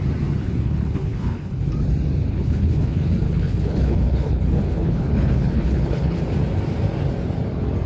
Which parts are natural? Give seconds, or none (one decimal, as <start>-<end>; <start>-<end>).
0.0-0.4; 1.7-2.3; 6.2-7.9